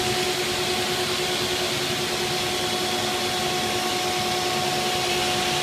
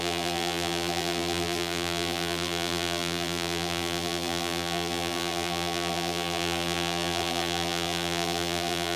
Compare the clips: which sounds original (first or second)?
first